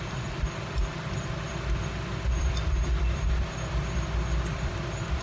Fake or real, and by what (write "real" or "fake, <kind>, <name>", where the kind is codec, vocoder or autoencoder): fake, vocoder, BigVGAN v2